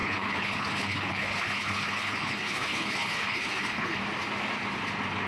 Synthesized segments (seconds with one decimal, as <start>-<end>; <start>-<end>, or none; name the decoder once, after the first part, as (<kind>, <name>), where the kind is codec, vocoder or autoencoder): 0.0-4.0 (codec, HILCodec)